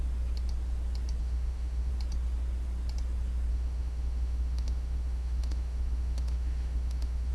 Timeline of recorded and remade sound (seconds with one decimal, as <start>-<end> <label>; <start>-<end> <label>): 0.0-1.2 recorded; 1.2-1.9 remade; 1.9-3.5 recorded; 3.5-7.3 remade